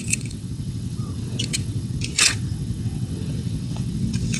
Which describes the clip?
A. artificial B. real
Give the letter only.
A